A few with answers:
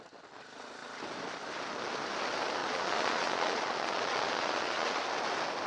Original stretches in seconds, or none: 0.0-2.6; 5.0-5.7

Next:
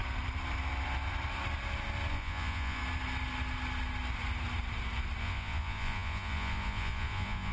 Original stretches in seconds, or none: 0.0-2.1; 2.8-5.2